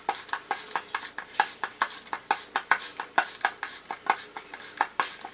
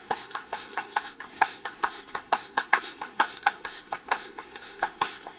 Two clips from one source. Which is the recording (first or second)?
first